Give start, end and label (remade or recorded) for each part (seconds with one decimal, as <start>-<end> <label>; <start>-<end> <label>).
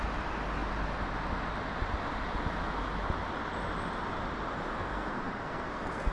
0.0-4.8 recorded; 4.8-6.1 remade